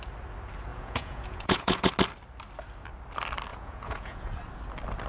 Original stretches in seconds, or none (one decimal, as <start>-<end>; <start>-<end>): 0.0-0.7; 1.9-3.5; 4.3-5.1